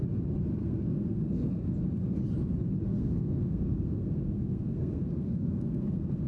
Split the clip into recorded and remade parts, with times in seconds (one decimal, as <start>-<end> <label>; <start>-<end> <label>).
0.0-0.5 recorded; 0.5-1.6 remade; 1.6-2.9 recorded; 2.9-6.3 remade